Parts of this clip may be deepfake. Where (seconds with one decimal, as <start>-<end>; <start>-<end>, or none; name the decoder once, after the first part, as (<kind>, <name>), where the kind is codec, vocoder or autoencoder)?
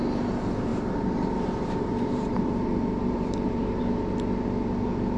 0.7-3.8 (vocoder, BigVGAN v2)